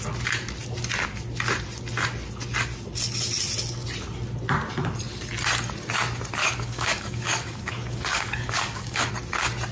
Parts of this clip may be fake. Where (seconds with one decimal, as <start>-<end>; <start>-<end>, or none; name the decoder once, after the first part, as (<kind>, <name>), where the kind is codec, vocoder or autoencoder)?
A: 6.4-9.1 (codec, DAC)

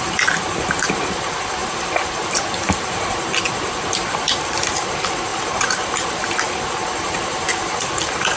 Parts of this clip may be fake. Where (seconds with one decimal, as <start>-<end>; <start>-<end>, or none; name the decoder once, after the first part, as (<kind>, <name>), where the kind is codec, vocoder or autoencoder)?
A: 1.6-2.4 (vocoder, BigVGAN v2)

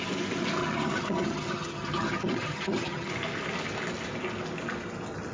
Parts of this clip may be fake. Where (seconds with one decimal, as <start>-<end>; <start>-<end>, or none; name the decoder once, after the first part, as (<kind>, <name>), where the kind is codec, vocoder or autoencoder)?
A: 0.6-3.1 (vocoder, HiFi-GAN)

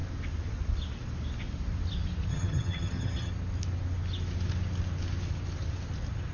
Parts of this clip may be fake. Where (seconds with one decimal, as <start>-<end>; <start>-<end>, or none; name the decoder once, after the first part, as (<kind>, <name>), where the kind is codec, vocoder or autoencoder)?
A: 2.3-3.3 (vocoder, HiFi-GAN)

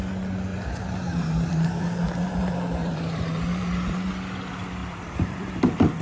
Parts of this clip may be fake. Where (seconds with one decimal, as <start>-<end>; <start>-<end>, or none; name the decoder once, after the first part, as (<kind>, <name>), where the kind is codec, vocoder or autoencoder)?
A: 0.5-4.1 (vocoder, BigVGAN v2); 4.8-5.5

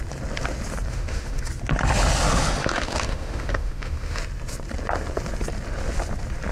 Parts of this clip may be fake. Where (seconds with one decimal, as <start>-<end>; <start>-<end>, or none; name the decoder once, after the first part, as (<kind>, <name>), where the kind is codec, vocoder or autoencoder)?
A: 0.9-1.5 (autoencoder, DAC-VAE); 2.6-4.2

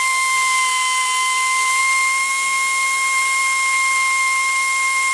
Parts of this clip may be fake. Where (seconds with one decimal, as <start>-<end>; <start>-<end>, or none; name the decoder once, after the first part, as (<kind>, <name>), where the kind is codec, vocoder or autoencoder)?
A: 0.0-5.1 (autoencoder, DAC-VAE)